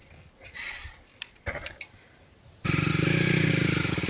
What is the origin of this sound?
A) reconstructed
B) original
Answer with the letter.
B